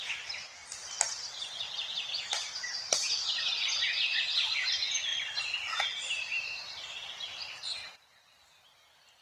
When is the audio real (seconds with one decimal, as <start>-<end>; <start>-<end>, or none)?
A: 0.0-5.1; 8.5-9.2

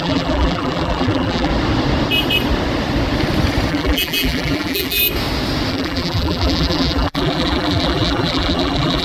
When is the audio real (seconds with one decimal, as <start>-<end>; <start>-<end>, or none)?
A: 1.5-3.7; 5.0-5.7

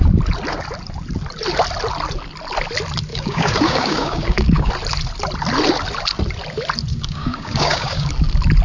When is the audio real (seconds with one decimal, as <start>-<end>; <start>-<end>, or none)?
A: 0.0-3.1; 4.7-6.9; 8.1-8.6

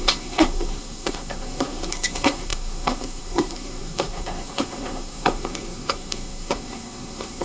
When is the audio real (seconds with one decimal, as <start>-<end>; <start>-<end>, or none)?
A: none

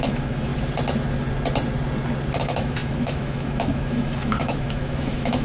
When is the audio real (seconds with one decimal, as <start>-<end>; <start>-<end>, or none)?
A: 0.5-2.4